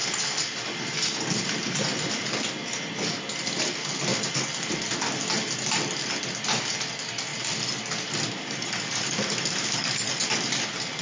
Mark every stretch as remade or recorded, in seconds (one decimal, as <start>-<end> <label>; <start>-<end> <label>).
0.0-11.0 recorded